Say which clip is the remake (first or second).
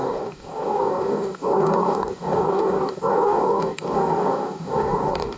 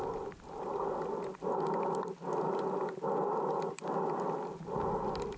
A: first